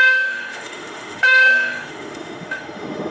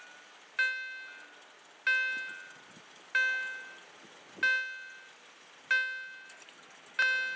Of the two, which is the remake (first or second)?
first